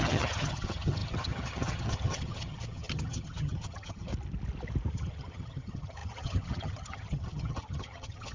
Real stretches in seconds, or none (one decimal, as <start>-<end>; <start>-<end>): 4.1-4.9